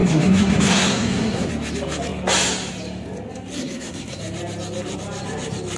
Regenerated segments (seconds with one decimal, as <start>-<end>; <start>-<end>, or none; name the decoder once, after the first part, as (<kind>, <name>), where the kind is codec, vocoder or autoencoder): 0.0-1.5 (codec, SNAC); 3.6-4.2